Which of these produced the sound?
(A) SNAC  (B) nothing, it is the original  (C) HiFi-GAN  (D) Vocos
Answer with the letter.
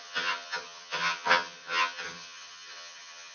C